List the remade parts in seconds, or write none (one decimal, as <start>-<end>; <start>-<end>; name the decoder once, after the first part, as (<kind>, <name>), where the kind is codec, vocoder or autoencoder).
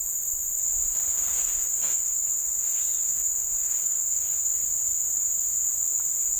1.1-4.3 (autoencoder, DAC-VAE)